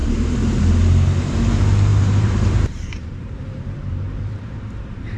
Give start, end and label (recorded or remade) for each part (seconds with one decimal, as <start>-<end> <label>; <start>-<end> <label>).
0.0-0.6 remade; 0.6-1.9 recorded; 1.9-5.2 remade